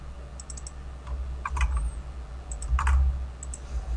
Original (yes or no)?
yes